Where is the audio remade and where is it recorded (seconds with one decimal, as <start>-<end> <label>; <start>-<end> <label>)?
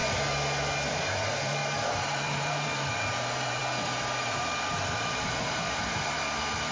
0.0-0.9 recorded; 0.9-3.6 remade; 3.6-4.2 recorded; 4.2-6.7 remade